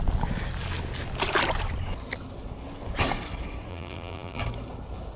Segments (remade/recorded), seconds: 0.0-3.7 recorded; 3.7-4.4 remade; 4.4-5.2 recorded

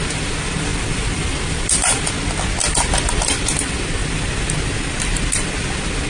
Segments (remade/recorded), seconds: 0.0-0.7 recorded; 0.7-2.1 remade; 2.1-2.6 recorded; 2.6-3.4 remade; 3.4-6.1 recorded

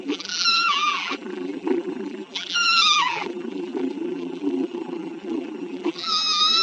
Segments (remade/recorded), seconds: 0.0-6.6 remade